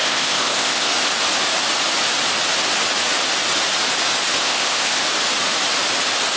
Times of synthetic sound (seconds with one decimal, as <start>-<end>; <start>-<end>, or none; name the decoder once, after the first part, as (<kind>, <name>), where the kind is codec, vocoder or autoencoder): 0.0-0.9 (codec, ZipCodec); 4.4-5.0